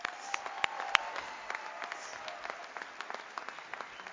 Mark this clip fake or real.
real